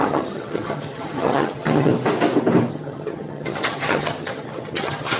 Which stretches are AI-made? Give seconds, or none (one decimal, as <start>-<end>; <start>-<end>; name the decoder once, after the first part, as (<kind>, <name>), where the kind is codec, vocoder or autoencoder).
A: 0.0-1.9 (vocoder, HiFi-GAN); 2.7-5.2